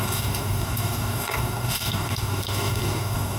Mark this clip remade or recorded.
remade